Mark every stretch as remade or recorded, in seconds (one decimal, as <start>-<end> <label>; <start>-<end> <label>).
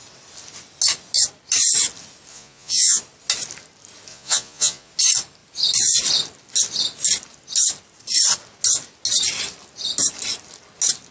0.0-2.3 recorded; 2.3-3.0 remade; 3.0-4.1 recorded; 4.1-4.9 remade; 4.9-11.1 recorded